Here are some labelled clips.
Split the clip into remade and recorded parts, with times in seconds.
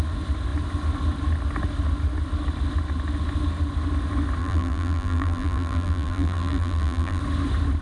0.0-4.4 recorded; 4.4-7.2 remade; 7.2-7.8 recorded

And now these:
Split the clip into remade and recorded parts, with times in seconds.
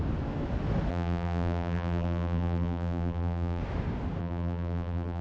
0.0-0.9 recorded; 0.9-3.6 remade; 3.6-4.2 recorded; 4.2-5.2 remade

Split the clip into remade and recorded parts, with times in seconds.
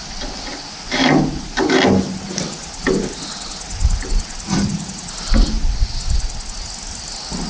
0.0-7.5 recorded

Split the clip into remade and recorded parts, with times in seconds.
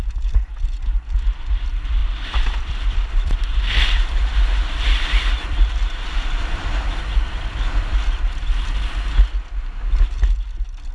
0.0-2.0 recorded; 2.0-3.6 remade; 3.6-4.3 recorded; 4.3-6.6 remade; 6.6-10.9 recorded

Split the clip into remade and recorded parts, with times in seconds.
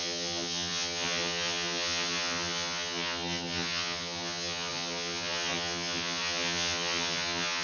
0.0-7.6 remade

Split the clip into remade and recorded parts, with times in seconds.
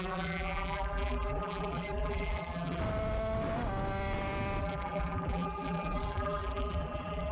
0.0-2.8 remade; 2.8-4.6 recorded; 4.6-7.3 remade